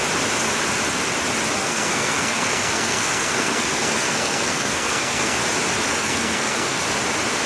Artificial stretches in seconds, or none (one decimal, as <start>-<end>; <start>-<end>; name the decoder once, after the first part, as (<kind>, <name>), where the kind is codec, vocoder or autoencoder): 1.6-5.4 (codec, SNAC); 5.9-6.8